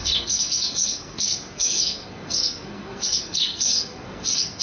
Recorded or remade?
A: remade